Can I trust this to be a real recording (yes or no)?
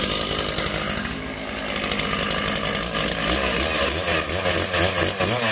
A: yes